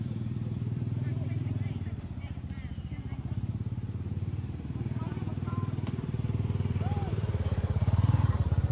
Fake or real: fake